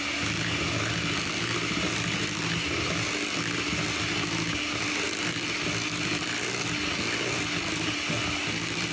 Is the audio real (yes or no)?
yes